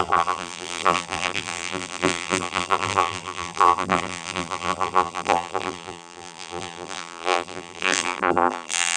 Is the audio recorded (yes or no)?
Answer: no